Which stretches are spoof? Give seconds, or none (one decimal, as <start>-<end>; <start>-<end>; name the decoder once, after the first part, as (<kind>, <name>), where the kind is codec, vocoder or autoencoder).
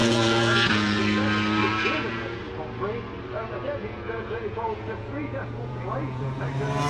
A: 0.0-1.0 (vocoder, Vocos); 1.6-2.4; 3.8-6.4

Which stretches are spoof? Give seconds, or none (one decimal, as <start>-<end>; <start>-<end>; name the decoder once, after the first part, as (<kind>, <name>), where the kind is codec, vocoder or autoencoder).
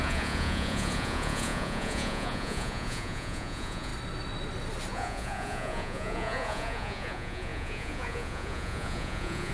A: 0.0-3.9 (vocoder, Vocos); 4.9-9.5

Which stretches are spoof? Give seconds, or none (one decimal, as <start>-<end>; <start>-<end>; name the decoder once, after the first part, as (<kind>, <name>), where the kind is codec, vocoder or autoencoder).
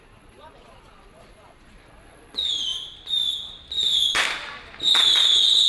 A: 0.0-2.7 (vocoder, Vocos); 4.9-5.7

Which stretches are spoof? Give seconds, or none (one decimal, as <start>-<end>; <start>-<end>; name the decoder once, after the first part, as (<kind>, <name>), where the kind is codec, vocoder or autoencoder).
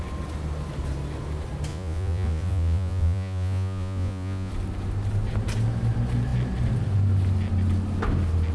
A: 1.7-4.5 (vocoder, Vocos)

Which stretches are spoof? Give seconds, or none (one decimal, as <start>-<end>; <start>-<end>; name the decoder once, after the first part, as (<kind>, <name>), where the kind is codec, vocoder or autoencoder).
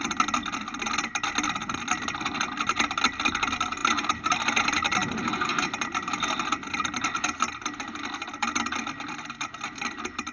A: none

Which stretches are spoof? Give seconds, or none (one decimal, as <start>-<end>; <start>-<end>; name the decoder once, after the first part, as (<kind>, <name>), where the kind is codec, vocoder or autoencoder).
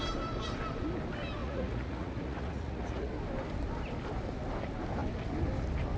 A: 1.4-3.1 (vocoder, Vocos)